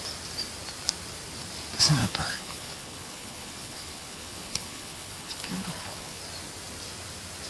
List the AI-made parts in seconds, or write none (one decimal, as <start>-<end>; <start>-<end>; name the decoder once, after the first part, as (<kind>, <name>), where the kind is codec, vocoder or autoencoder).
2.0-6.2 (codec, HILCodec)